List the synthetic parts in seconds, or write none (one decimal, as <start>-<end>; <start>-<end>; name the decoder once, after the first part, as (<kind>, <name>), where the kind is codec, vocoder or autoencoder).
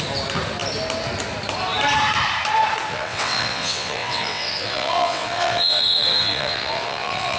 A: 2.9-7.4 (vocoder, WaveNeXt)